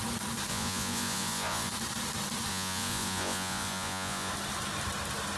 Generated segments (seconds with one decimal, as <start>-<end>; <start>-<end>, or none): 0.5-1.7; 2.5-4.3